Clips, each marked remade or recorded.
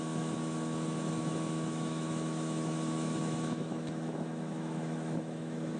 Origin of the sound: remade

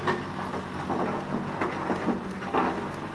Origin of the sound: recorded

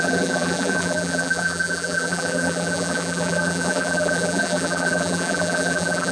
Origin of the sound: remade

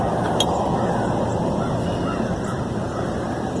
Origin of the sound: recorded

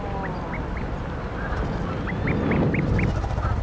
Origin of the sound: recorded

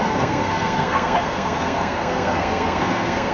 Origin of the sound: remade